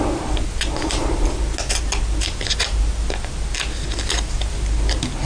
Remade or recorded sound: recorded